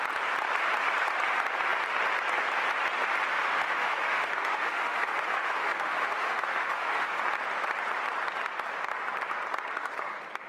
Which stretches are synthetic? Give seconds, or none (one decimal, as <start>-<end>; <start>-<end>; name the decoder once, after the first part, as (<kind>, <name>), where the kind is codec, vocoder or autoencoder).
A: 3.3-7.2 (autoencoder, DAC-VAE)